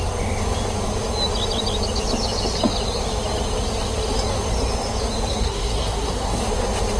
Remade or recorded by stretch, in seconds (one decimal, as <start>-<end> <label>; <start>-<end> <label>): 0.0-5.3 recorded; 5.3-6.4 remade; 6.4-7.0 recorded